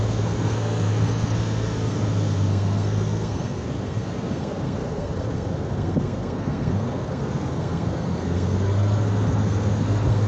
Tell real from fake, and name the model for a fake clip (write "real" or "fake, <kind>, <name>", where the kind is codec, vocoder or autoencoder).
fake, codec, SNAC